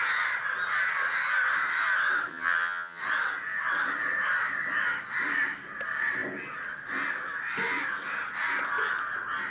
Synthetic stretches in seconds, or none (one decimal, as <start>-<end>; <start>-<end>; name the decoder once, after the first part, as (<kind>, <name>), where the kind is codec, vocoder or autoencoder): 2.3-3.0 (vocoder, HiFi-GAN)